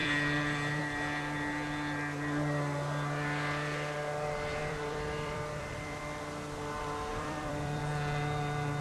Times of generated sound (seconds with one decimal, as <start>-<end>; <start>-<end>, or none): 0.0-0.8; 4.6-6.0; 7.1-7.8